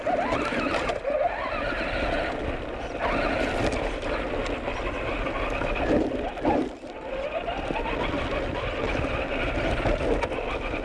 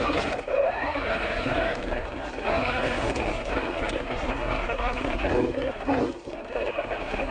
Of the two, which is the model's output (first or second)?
second